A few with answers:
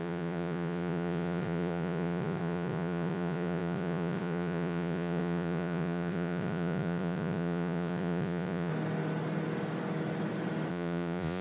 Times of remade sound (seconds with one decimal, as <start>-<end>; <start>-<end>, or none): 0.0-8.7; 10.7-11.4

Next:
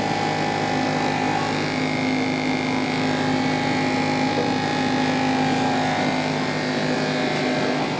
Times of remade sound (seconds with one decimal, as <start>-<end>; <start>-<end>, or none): none

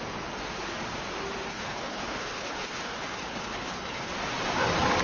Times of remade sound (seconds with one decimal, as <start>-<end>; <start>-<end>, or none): 1.5-4.1

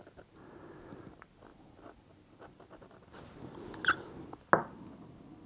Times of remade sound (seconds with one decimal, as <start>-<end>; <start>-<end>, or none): none

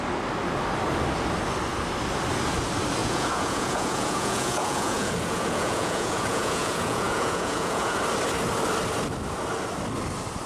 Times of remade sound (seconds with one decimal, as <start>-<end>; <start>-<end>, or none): 3.0-8.0

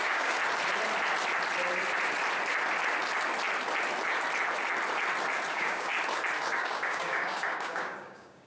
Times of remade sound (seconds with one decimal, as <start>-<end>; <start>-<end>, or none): 0.0-0.4; 5.5-5.9; 6.5-8.5

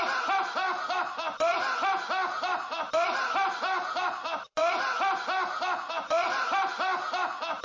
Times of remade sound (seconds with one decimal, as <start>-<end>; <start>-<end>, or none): 0.0-1.5; 2.3-4.6; 5.9-7.6

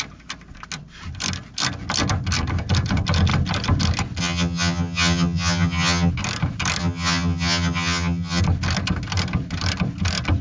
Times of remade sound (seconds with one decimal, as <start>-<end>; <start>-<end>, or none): 4.2-6.1; 6.8-8.4